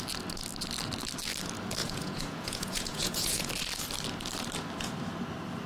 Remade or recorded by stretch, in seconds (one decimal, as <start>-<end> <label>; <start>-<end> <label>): 0.0-1.8 recorded; 1.8-3.5 remade; 3.5-5.7 recorded